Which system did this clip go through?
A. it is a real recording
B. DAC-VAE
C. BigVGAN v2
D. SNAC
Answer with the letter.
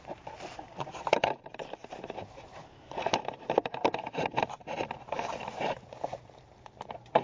C